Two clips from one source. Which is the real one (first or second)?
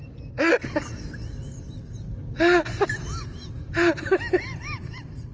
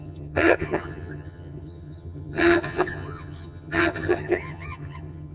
first